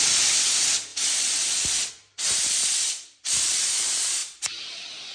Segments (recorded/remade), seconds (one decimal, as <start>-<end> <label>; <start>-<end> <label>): 0.0-0.9 recorded; 0.9-1.9 remade; 1.9-2.6 recorded; 2.6-3.7 remade; 3.7-5.1 recorded